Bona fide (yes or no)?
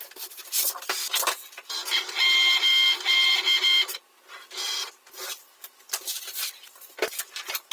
yes